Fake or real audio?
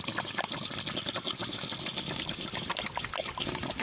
real